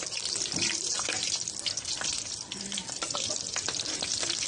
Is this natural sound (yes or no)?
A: yes